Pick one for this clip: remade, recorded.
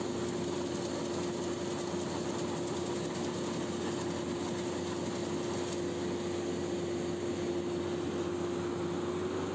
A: recorded